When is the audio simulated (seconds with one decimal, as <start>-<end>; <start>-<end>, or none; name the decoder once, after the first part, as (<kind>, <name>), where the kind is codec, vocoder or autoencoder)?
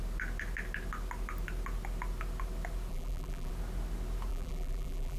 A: 2.9-3.5 (vocoder, BigVGAN v2); 4.3-5.2